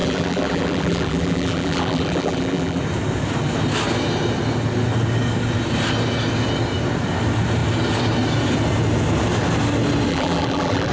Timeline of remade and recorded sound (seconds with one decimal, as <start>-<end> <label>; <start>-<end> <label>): 0.0-2.8 remade; 2.8-10.1 recorded; 10.1-10.9 remade